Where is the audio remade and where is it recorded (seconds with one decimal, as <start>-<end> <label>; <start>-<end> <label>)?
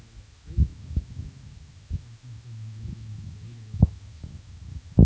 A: 0.0-5.0 remade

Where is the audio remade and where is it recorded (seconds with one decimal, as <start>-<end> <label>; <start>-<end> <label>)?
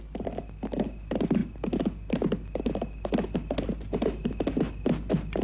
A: 0.0-5.4 recorded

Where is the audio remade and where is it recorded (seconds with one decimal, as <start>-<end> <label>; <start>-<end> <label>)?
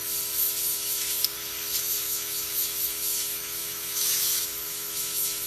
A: 0.0-0.6 recorded; 0.6-1.2 remade; 1.2-1.8 recorded; 1.8-5.5 remade